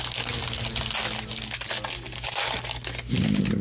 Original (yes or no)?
yes